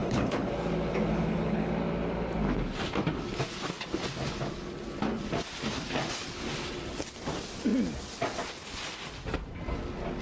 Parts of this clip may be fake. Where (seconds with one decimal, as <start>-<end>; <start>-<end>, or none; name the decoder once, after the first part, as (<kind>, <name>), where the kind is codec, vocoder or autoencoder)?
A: 0.0-0.5 (codec, HILCodec); 1.1-1.7